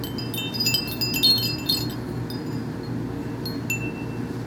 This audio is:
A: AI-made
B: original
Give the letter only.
B